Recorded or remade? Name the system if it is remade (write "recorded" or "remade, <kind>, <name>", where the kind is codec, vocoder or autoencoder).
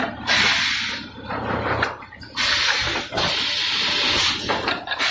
recorded